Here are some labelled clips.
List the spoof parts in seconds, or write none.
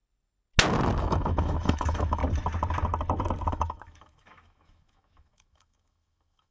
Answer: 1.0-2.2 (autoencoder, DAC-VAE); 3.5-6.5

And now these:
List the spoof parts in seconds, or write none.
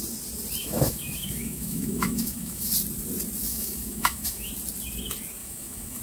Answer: 0.6-2.7 (autoencoder, DAC-VAE); 3.5-4.5; 5.4-6.0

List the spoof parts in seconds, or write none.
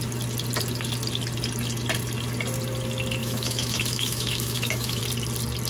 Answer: 3.2-5.0 (autoencoder, DAC-VAE)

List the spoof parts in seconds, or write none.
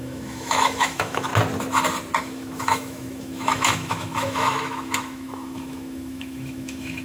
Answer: 0.0-1.3 (autoencoder, DAC-VAE); 2.2-7.0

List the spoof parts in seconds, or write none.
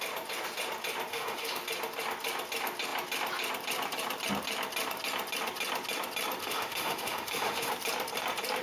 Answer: 1.1-1.6 (autoencoder, DAC-VAE); 6.4-7.7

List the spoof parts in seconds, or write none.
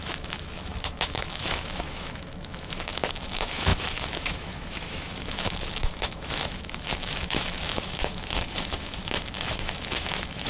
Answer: 0.0-10.5 (autoencoder, DAC-VAE)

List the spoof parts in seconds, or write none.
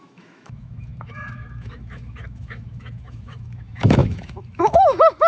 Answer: 0.0-5.3 (autoencoder, DAC-VAE)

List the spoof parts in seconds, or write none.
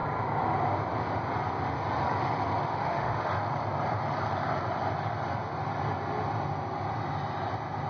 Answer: 2.7-3.3 (autoencoder, DAC-VAE)